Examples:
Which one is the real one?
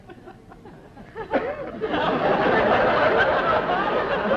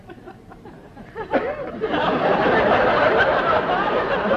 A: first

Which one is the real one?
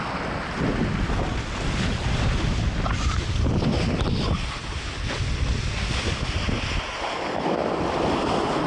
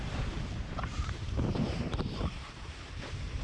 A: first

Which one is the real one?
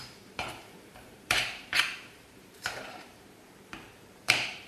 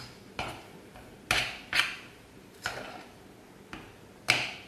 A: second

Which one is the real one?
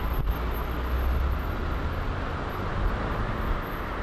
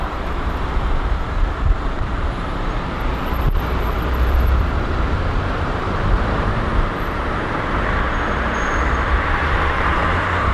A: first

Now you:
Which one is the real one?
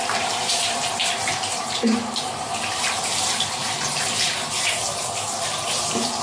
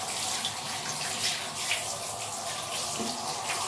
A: second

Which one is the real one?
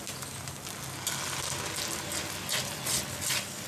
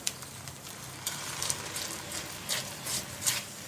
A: first